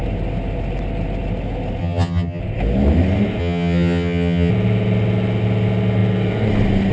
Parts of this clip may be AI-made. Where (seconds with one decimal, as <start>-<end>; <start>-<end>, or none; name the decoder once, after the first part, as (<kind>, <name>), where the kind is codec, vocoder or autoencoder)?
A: 1.8-2.4 (vocoder, HiFi-GAN); 3.4-4.5